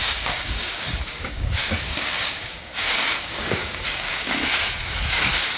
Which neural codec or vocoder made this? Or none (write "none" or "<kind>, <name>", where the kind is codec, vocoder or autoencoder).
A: codec, DAC